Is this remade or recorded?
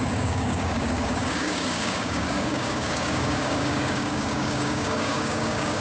remade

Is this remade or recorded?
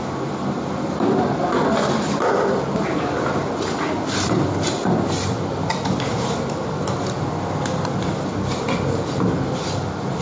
recorded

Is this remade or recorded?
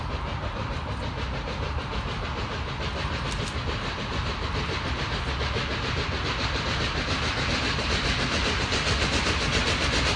recorded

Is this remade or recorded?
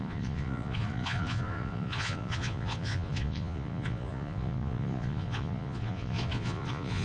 remade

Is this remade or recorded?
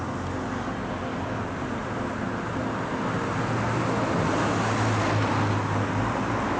recorded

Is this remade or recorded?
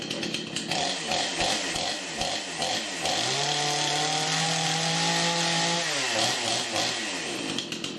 recorded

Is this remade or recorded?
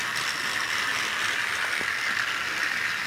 recorded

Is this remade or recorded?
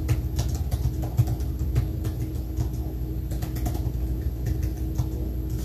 recorded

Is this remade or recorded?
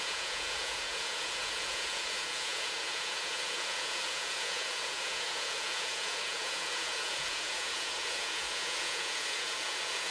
remade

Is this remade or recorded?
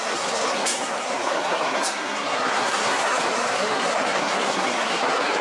remade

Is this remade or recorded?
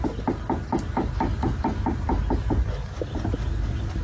recorded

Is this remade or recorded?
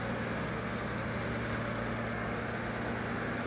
recorded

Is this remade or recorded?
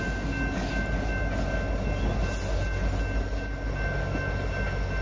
recorded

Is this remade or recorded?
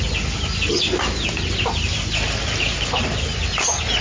recorded